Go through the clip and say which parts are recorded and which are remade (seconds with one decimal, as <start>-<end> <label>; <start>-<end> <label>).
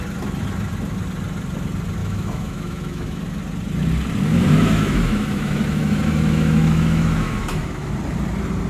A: 0.0-2.0 recorded; 2.0-3.2 remade; 3.2-4.3 recorded; 4.3-7.9 remade; 7.9-8.7 recorded